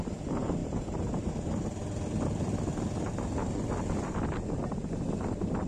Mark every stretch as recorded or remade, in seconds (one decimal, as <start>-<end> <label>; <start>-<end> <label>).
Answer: 0.0-0.6 recorded; 0.6-1.3 remade; 1.3-5.7 recorded